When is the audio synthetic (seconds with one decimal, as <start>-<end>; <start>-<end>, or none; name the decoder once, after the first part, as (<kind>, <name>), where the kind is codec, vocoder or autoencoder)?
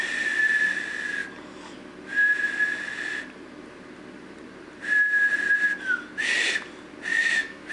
7.1-7.7 (autoencoder, DAC-VAE)